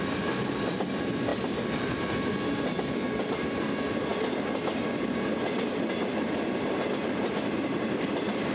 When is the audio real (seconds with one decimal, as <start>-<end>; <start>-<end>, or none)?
0.0-8.5